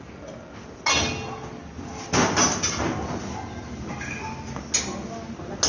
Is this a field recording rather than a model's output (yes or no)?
yes